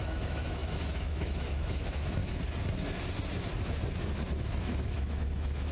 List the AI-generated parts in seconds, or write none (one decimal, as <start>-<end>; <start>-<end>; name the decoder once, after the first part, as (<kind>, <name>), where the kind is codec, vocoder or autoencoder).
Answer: 0.0-2.2 (autoencoder, DAC-VAE); 4.6-5.7